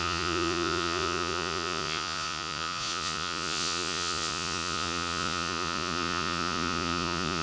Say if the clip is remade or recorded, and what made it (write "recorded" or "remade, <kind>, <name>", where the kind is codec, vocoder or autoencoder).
remade, vocoder, Vocos